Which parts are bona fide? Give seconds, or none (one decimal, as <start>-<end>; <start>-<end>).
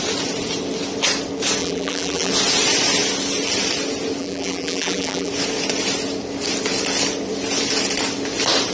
0.0-1.6; 2.3-4.2; 5.3-8.7